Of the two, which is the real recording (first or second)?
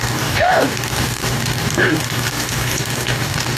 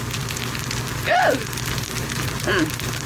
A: second